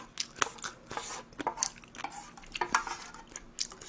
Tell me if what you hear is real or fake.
real